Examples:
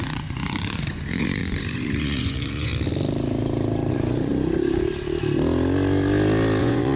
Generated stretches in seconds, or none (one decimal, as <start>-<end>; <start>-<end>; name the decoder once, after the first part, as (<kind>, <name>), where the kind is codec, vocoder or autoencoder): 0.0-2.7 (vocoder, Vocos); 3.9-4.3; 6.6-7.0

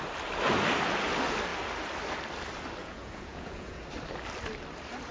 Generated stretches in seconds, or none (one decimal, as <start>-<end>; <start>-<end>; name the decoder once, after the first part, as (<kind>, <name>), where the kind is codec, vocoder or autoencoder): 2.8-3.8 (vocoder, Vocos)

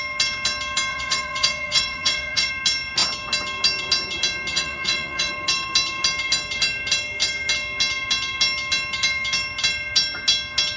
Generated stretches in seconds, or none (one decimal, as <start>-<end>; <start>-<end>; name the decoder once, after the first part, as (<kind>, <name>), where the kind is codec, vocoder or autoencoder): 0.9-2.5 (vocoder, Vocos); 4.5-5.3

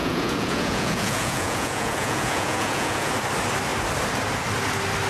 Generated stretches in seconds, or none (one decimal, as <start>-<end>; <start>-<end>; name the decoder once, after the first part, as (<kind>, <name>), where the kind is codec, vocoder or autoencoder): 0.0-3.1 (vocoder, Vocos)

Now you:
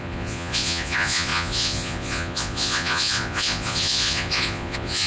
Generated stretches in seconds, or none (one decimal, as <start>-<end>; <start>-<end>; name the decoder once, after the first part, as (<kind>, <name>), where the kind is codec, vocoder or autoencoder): 0.0-5.1 (vocoder, Vocos)